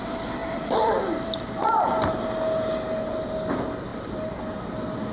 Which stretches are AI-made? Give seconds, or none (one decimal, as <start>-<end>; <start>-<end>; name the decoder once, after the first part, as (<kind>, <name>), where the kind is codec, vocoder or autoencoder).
0.4-1.9 (vocoder, BigVGAN v2); 3.9-4.4